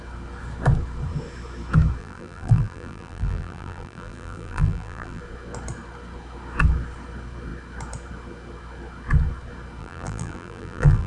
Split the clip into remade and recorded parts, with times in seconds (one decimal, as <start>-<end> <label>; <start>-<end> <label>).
0.0-2.0 recorded; 2.0-5.2 remade; 5.2-9.8 recorded; 9.8-11.1 remade